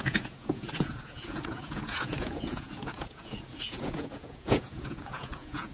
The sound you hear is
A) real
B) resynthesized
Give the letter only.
B